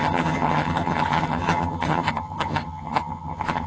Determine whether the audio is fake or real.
fake